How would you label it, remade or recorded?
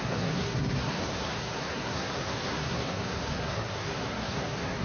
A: remade